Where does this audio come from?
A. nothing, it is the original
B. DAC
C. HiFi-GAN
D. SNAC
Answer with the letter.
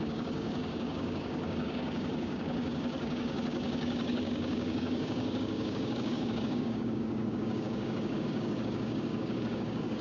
B